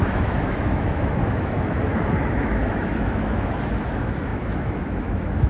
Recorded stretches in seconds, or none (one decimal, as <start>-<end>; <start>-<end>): none